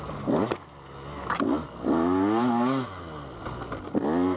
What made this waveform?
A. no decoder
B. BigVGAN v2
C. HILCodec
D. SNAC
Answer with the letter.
A